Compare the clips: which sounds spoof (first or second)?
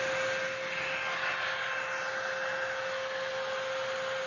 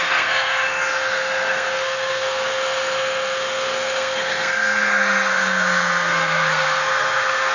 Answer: second